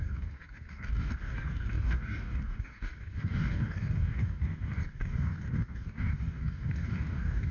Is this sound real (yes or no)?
no